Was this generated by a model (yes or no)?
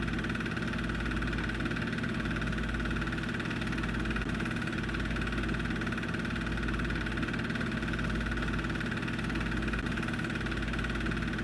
no